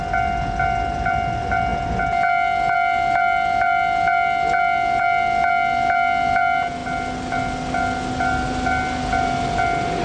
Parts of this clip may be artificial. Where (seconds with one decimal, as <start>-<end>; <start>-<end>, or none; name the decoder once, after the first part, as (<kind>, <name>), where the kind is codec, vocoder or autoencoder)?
none